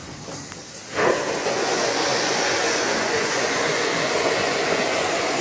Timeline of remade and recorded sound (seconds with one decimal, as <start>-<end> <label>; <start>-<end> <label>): 0.0-1.3 recorded; 1.3-5.4 remade

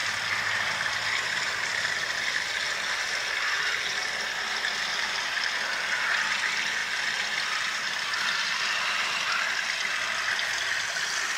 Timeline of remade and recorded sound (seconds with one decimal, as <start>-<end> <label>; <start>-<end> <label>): 0.0-11.4 recorded

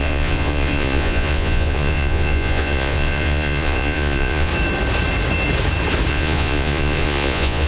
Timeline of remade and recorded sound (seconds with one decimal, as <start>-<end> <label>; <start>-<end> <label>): 0.0-4.5 remade; 4.5-6.1 recorded; 6.1-7.7 remade

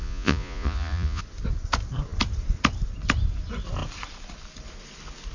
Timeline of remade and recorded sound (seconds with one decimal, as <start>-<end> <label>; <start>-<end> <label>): 0.0-1.2 remade; 1.2-5.3 recorded